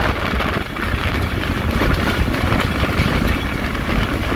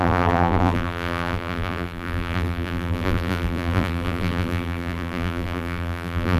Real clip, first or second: first